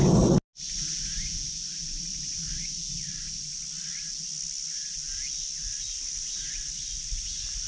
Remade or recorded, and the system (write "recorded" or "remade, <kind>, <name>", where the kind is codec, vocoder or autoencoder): recorded